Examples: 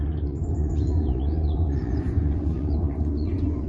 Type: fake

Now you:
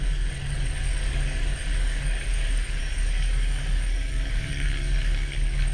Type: fake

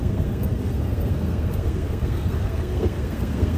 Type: fake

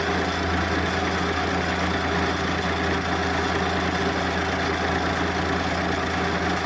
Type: real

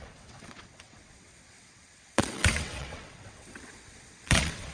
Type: fake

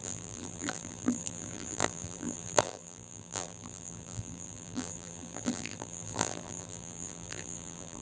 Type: fake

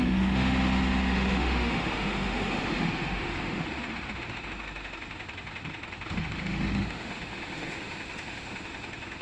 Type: fake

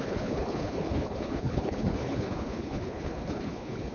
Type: fake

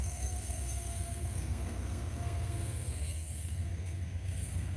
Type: fake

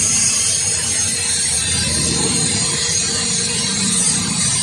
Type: fake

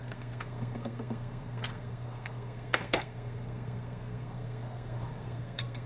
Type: fake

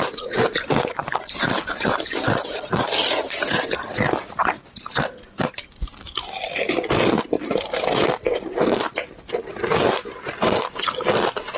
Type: real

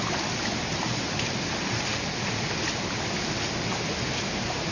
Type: real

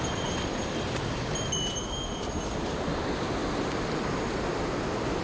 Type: real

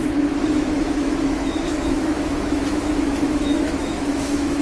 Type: fake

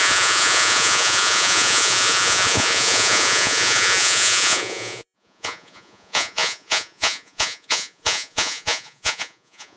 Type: fake